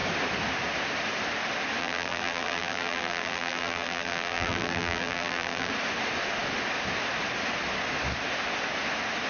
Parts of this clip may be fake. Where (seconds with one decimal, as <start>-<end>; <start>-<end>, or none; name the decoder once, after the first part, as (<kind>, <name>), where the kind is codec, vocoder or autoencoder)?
1.8-5.7 (vocoder, BigVGAN v2)